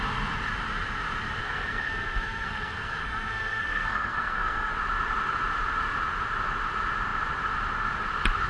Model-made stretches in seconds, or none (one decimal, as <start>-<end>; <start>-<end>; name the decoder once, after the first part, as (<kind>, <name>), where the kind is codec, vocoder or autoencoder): 1.4-4.7 (codec, SNAC)